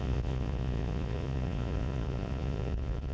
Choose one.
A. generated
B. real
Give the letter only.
A